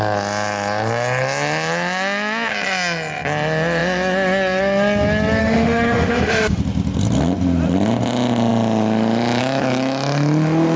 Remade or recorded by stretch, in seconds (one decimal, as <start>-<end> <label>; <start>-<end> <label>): 0.0-5.4 recorded; 5.4-6.6 remade; 6.6-10.8 recorded